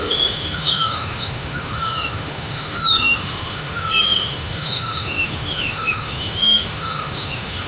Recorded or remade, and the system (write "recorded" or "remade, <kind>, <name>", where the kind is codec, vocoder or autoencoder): remade, autoencoder, DAC-VAE